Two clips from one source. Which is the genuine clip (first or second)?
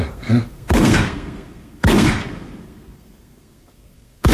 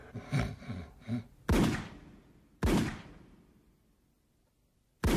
second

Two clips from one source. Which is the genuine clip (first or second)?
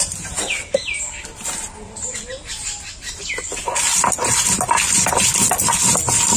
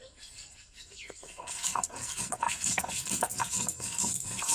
first